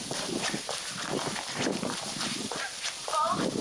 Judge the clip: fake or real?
real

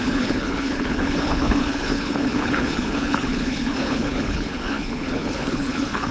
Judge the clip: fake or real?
fake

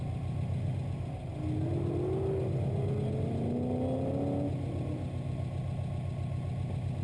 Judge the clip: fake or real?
real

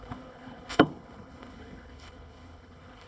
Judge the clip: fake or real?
fake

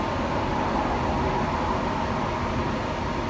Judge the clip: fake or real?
real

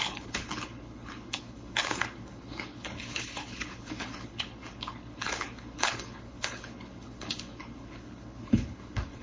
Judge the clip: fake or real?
fake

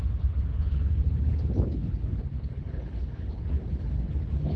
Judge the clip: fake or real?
fake